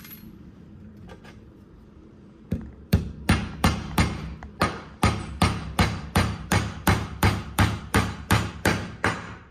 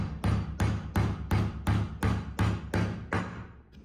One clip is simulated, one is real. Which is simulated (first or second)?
first